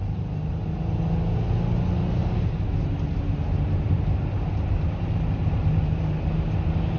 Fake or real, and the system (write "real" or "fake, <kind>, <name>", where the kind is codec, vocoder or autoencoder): real